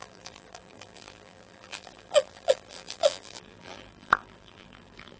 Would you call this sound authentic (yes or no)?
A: no